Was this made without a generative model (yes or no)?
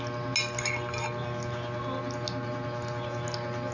yes